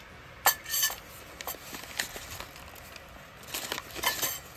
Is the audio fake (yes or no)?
no